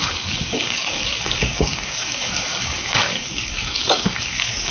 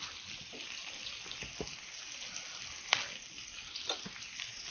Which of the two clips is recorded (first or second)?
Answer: second